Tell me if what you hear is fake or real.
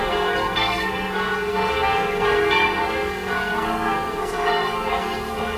fake